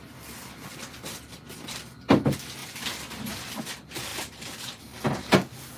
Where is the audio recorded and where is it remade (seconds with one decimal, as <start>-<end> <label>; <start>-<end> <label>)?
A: 0.0-4.1 recorded; 4.1-4.8 remade; 4.8-5.8 recorded